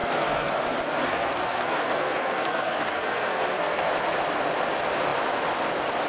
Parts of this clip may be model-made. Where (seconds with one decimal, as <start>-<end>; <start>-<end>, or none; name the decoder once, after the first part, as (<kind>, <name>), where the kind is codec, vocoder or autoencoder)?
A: 0.0-0.5 (codec, SNAC); 1.0-3.9